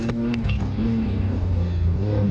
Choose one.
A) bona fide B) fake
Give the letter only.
B